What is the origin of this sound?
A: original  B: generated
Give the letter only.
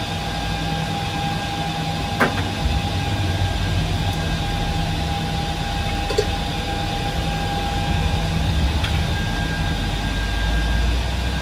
A